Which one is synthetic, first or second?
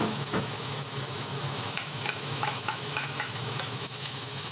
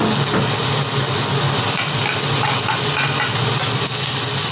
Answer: first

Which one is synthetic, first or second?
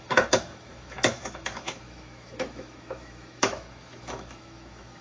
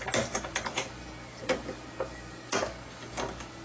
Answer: first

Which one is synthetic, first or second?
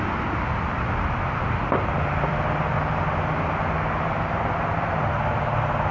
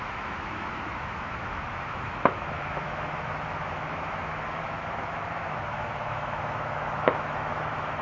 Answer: second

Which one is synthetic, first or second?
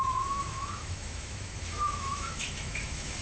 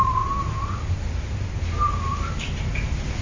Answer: first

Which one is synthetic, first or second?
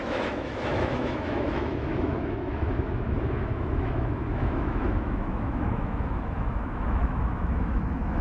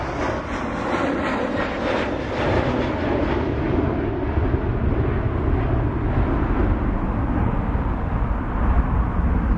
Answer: first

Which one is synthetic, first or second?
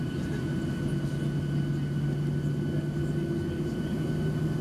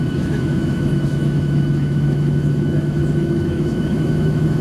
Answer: second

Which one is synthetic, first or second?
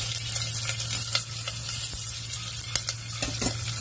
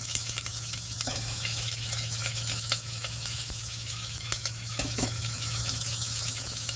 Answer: second